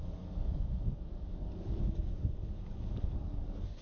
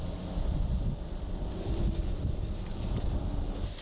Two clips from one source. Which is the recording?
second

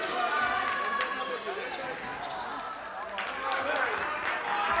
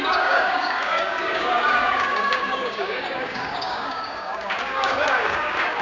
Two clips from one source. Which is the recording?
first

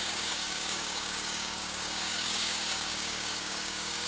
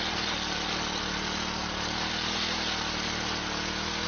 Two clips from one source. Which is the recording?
second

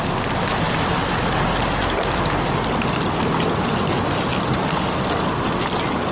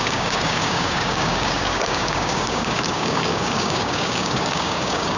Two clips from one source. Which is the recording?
first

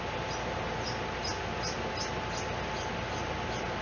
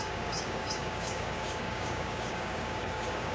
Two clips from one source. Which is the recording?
first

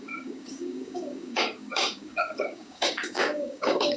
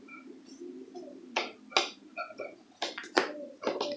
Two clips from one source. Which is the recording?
second